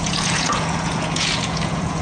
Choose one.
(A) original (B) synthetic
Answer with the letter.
B